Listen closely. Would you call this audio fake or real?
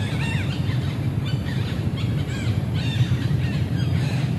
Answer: fake